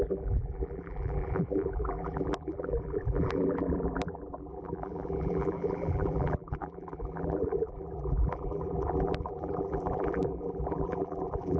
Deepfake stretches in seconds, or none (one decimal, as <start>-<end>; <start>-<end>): 0.0-11.6